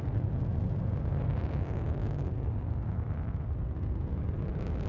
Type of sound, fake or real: real